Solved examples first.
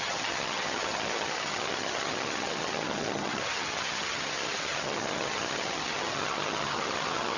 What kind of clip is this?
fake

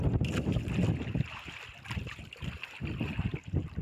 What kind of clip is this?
real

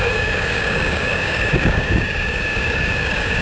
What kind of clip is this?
fake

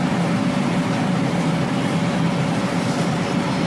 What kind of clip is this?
fake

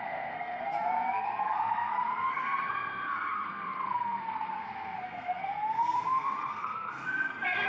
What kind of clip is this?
fake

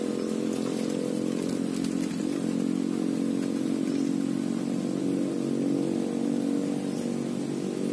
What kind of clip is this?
real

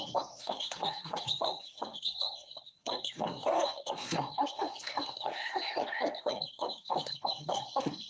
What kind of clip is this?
fake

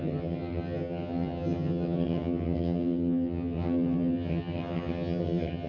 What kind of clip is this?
fake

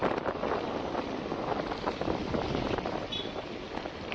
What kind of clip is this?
real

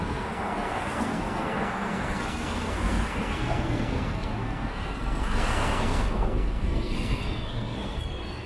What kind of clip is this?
fake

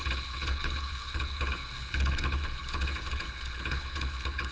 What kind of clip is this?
fake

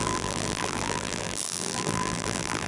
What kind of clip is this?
fake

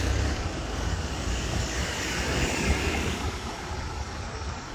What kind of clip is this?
fake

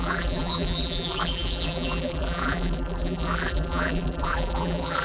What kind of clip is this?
fake